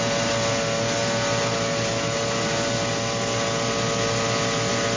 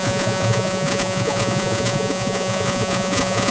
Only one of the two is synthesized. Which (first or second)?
second